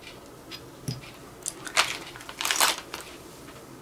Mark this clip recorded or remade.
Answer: recorded